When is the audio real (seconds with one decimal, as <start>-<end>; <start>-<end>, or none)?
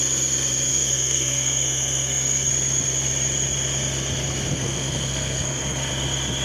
0.0-0.7; 2.5-4.5; 5.9-6.4